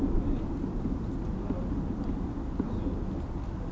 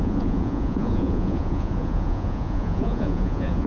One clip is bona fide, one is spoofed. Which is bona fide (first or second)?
first